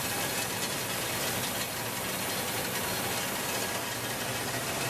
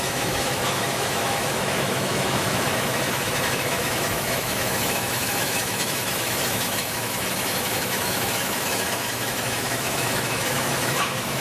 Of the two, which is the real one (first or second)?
first